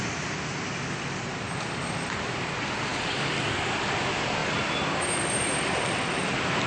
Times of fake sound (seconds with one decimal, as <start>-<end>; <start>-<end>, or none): none